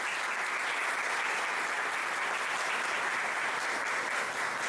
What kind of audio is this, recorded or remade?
recorded